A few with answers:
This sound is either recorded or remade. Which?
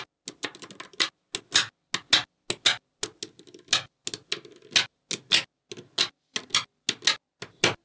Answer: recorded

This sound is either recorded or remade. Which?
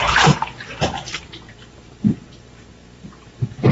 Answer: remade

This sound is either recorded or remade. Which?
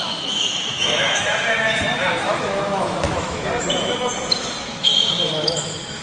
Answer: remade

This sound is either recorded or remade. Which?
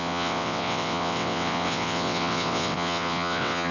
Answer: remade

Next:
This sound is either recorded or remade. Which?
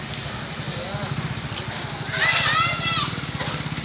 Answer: recorded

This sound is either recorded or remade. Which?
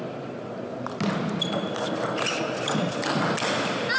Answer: recorded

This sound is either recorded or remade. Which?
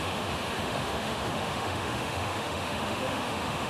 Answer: remade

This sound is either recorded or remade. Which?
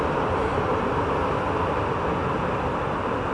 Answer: remade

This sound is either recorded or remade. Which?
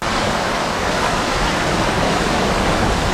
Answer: remade